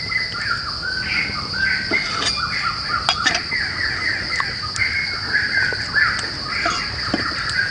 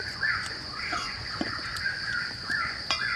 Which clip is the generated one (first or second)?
second